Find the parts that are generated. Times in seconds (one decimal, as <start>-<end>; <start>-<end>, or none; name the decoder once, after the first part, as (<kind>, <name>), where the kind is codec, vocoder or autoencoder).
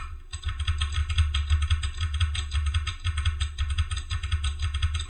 none